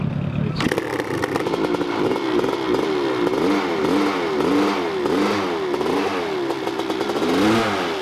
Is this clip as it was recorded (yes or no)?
yes